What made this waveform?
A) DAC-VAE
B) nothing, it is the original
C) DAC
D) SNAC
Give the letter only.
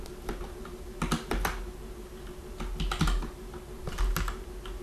B